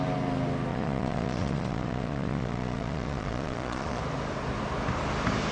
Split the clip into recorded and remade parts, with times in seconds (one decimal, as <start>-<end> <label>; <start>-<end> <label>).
0.0-0.7 recorded; 0.7-4.0 remade; 4.0-5.5 recorded